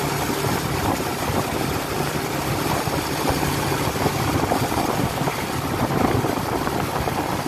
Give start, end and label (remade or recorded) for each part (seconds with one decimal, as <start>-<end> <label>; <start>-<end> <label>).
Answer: 0.0-1.1 recorded; 1.1-5.6 remade; 5.6-7.5 recorded